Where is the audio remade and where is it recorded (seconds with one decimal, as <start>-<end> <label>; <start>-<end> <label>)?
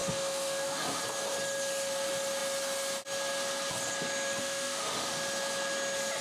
0.0-1.0 remade; 1.0-4.4 recorded; 4.4-5.1 remade; 5.1-6.2 recorded